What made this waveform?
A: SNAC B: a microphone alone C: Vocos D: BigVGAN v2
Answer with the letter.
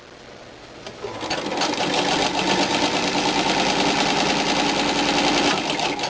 B